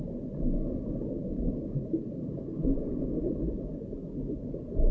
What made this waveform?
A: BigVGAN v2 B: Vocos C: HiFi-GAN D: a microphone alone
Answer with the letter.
D